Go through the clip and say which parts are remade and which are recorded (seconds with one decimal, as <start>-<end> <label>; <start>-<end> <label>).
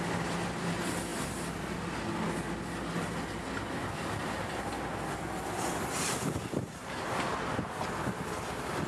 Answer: 0.0-8.9 recorded